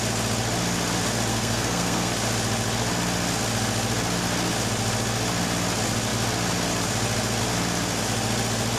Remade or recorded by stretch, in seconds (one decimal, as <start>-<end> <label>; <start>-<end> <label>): 0.0-1.3 recorded; 1.3-2.1 remade; 2.1-8.8 recorded